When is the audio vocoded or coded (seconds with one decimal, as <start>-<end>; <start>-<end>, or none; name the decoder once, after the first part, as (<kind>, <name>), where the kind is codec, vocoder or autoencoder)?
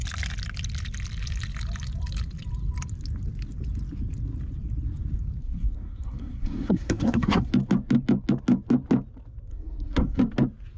5.4-7.5 (codec, SNAC); 9.5-10.2